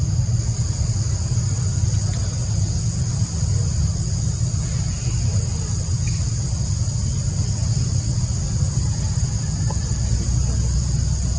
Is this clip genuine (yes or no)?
yes